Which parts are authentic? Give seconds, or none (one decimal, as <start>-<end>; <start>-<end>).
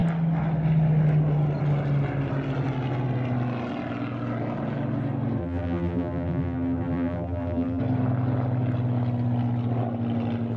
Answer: 0.0-5.4; 7.8-10.6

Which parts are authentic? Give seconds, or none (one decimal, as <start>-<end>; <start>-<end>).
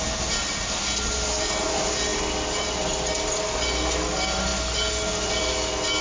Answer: 0.0-6.0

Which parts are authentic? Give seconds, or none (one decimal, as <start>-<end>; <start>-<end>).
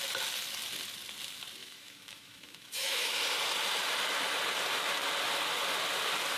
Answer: 0.0-1.6; 3.2-6.4